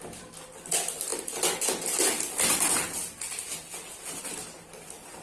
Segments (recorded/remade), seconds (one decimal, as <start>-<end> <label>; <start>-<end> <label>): 0.0-5.2 recorded